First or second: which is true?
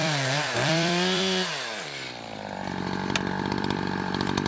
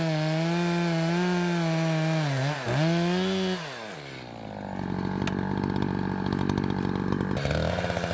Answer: second